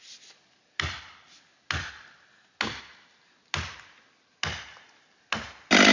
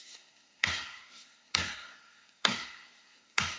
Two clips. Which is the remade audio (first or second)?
second